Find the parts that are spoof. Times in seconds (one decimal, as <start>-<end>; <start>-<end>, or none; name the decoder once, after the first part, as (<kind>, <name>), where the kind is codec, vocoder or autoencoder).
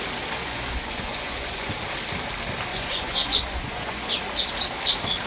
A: 0.4-1.7 (vocoder, Vocos); 2.7-4.2